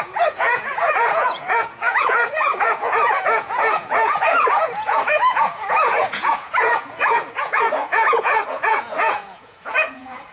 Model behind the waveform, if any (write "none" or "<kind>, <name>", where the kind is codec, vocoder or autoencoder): vocoder, Vocos